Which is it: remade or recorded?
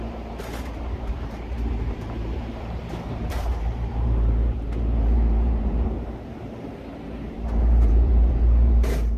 remade